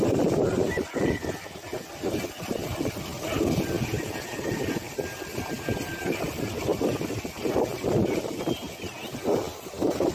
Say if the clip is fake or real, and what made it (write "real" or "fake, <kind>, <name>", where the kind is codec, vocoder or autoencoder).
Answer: real